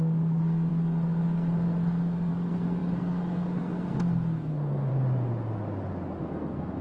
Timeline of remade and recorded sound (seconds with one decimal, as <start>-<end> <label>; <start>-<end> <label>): 0.0-4.9 remade; 4.9-6.2 recorded; 6.2-6.8 remade